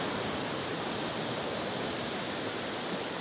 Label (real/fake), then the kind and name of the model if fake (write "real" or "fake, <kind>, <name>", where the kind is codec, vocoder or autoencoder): real